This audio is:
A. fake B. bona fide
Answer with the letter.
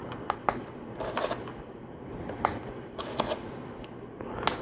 B